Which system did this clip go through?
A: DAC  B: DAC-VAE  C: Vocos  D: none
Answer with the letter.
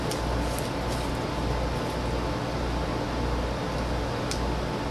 D